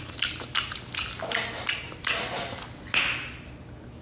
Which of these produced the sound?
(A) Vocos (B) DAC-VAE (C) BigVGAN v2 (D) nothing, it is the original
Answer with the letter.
D